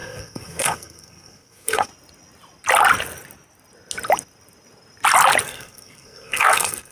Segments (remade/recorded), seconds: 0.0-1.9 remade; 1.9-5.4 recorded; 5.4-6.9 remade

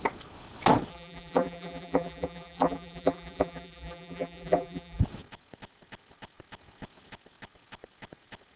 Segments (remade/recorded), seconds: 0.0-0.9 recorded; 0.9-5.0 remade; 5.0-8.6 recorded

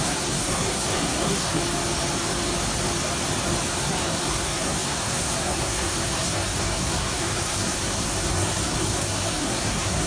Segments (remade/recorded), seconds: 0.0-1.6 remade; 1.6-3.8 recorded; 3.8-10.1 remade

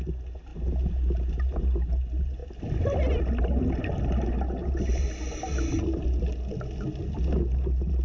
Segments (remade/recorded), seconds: 0.0-8.0 recorded